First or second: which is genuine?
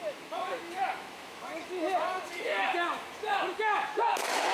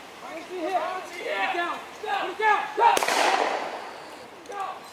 second